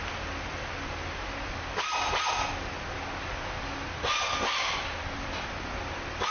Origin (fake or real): real